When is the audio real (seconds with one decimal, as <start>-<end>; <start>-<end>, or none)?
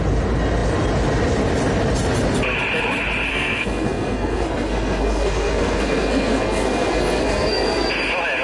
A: 0.0-3.3; 7.9-8.4